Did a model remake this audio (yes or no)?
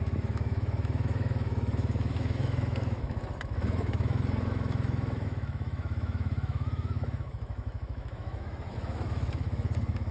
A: yes